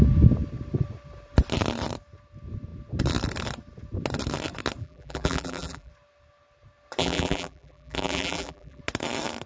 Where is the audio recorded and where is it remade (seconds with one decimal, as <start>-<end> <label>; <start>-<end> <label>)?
0.0-4.8 recorded; 4.8-5.9 remade; 5.9-7.0 recorded; 7.0-8.8 remade; 8.8-9.5 recorded

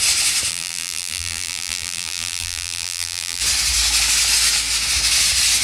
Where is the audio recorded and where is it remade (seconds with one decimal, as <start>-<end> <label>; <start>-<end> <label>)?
0.0-0.5 recorded; 0.5-3.4 remade; 3.4-5.6 recorded

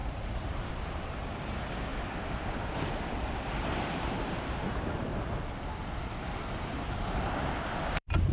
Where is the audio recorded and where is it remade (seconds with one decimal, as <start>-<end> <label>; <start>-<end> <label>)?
0.0-1.9 remade; 1.9-2.6 recorded; 2.6-5.1 remade; 5.1-7.6 recorded; 7.6-8.3 remade

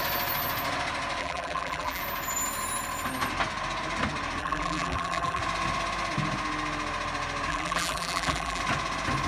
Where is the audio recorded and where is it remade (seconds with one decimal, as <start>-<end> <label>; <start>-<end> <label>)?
0.0-1.2 recorded; 1.2-2.0 remade; 2.0-4.4 recorded; 4.4-5.4 remade; 5.4-7.5 recorded; 7.5-8.6 remade; 8.6-9.3 recorded

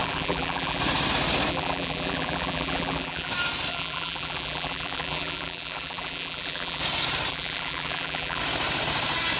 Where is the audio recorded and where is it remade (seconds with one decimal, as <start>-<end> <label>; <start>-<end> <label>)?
0.0-0.8 remade; 0.8-1.5 recorded; 1.5-3.3 remade; 3.3-3.7 recorded; 3.7-6.8 remade; 6.8-7.3 recorded; 7.3-8.4 remade; 8.4-9.4 recorded